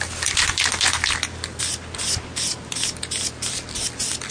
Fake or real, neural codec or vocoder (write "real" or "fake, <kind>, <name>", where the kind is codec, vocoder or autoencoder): real